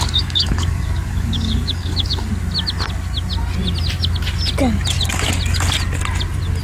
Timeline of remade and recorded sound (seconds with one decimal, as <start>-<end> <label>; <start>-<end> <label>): 0.0-2.3 remade; 2.3-6.6 recorded

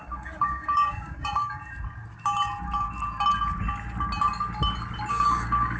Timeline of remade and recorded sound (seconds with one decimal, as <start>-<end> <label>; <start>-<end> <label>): 0.0-1.6 remade; 1.6-5.1 recorded; 5.1-5.8 remade

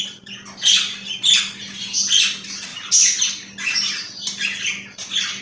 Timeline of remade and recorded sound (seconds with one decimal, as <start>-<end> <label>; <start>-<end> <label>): 0.0-5.4 recorded

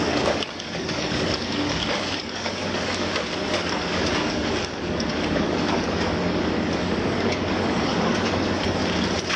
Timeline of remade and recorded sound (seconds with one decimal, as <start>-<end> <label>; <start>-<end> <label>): 0.0-8.8 remade; 8.8-9.4 recorded

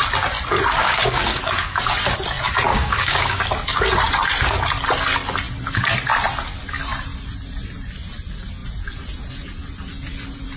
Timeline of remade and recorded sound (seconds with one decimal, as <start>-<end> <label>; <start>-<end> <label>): 0.0-0.8 recorded; 0.8-1.8 remade; 1.8-2.7 recorded; 2.7-3.4 remade; 3.4-10.6 recorded

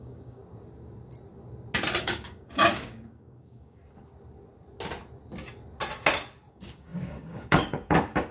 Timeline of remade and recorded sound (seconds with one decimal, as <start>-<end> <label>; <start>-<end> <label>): 0.0-0.4 remade; 0.4-2.0 recorded; 2.0-3.8 remade; 3.8-6.5 recorded; 6.5-8.3 remade